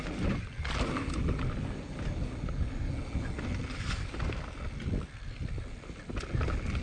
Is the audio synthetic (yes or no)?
no